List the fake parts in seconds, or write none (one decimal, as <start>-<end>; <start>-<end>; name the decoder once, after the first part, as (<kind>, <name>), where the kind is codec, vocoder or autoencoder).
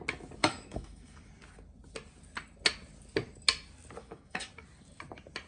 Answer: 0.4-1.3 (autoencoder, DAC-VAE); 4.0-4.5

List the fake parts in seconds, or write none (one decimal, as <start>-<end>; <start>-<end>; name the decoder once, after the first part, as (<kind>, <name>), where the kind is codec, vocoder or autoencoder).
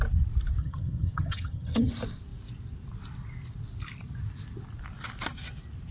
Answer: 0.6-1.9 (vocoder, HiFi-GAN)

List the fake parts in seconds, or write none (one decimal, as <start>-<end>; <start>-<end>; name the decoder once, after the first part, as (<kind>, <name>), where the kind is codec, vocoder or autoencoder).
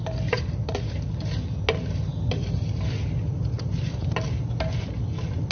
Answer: none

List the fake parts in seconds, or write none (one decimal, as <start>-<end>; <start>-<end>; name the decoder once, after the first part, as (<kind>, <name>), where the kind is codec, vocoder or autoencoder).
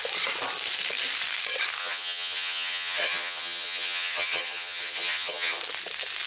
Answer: 1.8-5.6 (vocoder, HiFi-GAN)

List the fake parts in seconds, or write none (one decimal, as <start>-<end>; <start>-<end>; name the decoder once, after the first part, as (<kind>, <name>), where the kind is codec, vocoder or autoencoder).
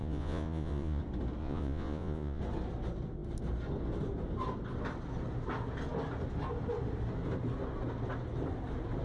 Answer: 0.0-1.0 (vocoder, Vocos); 1.4-2.4